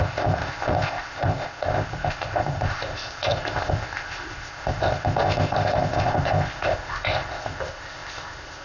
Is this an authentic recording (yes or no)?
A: no